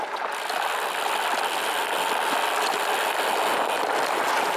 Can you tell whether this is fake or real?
real